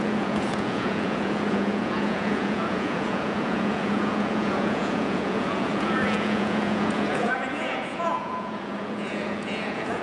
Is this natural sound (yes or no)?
no